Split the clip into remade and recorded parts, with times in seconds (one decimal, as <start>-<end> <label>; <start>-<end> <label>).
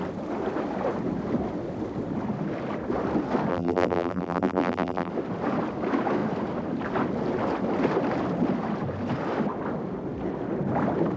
0.0-3.5 recorded; 3.5-5.1 remade; 5.1-11.2 recorded